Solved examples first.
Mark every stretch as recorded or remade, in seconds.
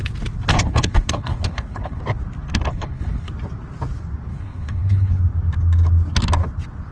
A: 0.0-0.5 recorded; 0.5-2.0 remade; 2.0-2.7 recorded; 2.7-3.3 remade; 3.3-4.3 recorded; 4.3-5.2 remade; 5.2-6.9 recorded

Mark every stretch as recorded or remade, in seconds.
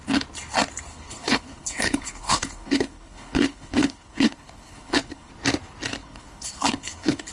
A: 0.0-0.9 recorded; 0.9-5.3 remade; 5.3-6.0 recorded; 6.0-7.3 remade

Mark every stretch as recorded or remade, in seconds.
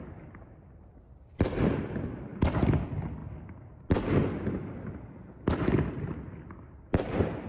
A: 0.0-7.5 recorded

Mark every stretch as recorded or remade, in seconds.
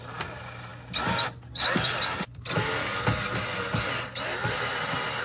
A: 0.0-5.2 recorded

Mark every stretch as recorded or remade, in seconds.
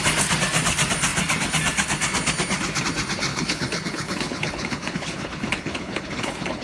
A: 0.0-3.3 recorded; 3.3-6.6 remade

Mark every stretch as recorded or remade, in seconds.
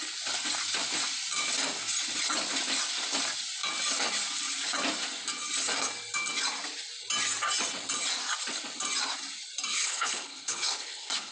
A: 0.0-9.7 recorded; 9.7-11.3 remade